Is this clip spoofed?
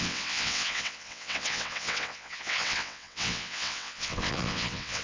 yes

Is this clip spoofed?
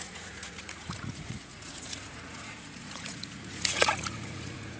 yes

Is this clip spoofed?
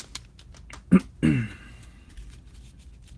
no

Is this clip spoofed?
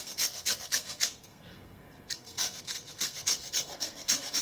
yes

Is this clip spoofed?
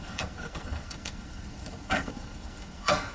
yes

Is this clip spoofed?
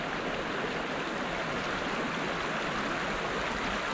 no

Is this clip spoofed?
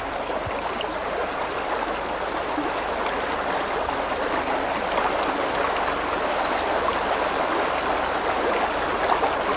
no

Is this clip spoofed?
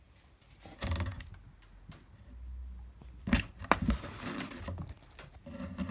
no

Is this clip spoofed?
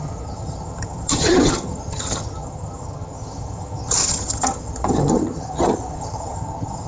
yes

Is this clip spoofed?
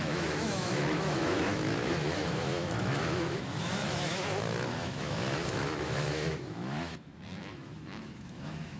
yes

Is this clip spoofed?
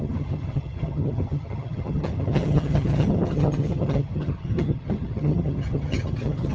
yes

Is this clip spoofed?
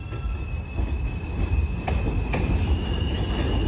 no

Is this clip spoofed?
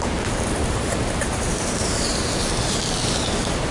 yes